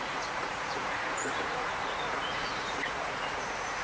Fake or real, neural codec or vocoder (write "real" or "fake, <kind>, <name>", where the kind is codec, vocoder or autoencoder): fake, vocoder, Vocos